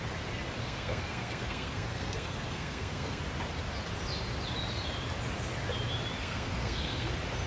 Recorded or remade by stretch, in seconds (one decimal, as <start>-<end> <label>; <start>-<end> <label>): 0.0-0.6 recorded; 0.6-3.2 remade; 3.2-6.2 recorded; 6.2-7.1 remade; 7.1-7.5 recorded